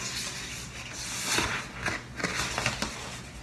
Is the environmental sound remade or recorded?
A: recorded